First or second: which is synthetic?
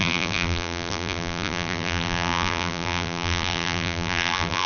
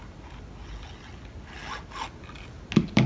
first